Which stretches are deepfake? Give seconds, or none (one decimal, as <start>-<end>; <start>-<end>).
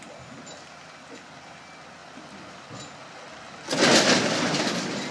none